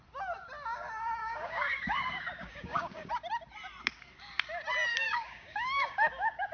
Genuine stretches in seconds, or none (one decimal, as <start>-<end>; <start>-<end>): 0.0-1.2; 3.1-4.9